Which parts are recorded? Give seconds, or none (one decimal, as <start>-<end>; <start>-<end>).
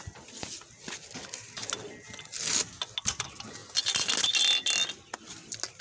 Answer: 0.0-5.8